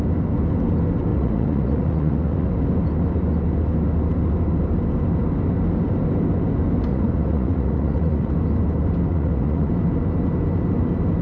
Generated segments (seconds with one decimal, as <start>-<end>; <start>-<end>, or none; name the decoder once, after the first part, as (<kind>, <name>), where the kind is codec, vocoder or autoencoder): 1.1-2.5 (vocoder, Vocos); 6.9-8.3; 9.1-9.7